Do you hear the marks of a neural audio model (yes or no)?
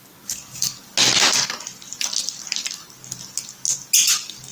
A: no